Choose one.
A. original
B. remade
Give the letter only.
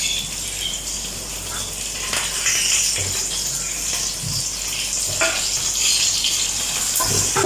A